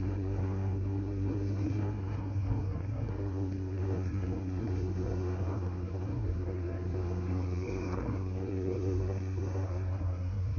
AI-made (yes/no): yes